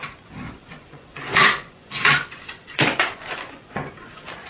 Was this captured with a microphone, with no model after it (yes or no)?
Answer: no